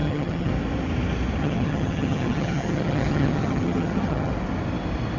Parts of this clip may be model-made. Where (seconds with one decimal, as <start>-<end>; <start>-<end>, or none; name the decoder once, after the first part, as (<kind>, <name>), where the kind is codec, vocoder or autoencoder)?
0.0-0.5 (vocoder, HiFi-GAN); 1.4-4.3